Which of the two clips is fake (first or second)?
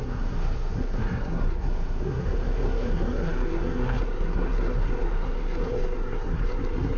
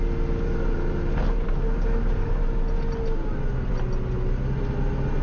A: first